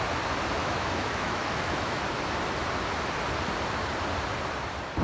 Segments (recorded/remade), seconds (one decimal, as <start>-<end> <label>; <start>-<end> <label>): 0.0-0.6 recorded; 0.6-2.0 remade; 2.0-5.0 recorded